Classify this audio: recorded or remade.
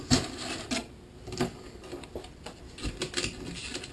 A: recorded